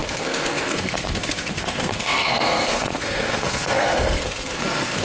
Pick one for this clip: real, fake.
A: fake